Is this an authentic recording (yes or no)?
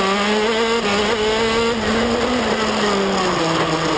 yes